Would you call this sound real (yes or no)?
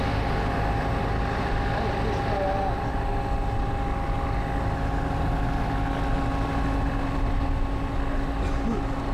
yes